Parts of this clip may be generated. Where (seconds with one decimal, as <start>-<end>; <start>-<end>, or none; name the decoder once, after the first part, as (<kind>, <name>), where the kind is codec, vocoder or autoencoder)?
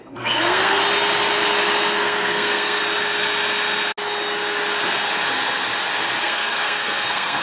0.0-0.8 (codec, SNAC); 2.0-2.8; 6.2-7.4